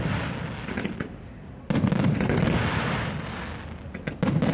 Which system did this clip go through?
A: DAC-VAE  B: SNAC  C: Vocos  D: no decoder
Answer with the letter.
D